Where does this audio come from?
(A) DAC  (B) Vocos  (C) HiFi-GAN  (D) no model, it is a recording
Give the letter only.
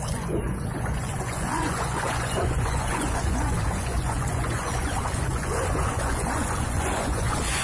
B